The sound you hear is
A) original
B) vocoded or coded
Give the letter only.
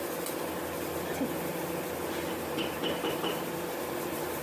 A